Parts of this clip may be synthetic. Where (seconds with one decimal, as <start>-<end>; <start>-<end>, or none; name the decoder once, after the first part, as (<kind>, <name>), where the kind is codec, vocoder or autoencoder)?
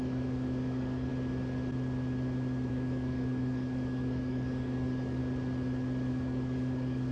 0.0-1.1 (codec, DAC); 2.7-5.2; 6.1-7.1